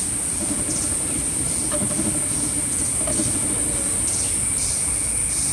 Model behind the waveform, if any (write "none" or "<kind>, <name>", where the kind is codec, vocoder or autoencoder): none